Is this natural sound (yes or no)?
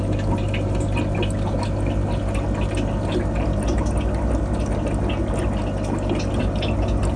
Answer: yes